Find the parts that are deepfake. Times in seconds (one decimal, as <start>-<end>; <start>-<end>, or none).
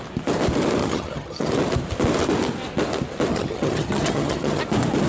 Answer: 0.8-1.5; 3.3-4.6